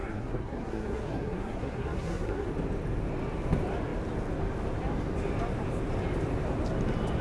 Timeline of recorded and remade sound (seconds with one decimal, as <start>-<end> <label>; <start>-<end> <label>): 0.0-2.5 remade; 2.5-7.2 recorded